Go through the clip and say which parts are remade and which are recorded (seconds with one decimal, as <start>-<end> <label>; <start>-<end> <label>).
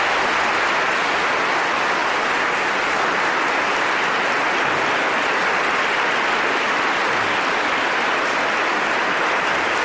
0.0-9.8 recorded